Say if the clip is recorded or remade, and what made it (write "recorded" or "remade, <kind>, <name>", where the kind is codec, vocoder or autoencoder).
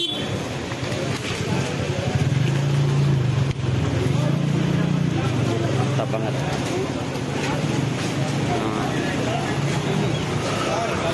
recorded